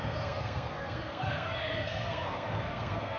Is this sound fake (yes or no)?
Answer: yes